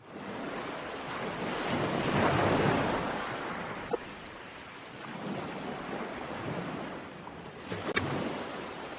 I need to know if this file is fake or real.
real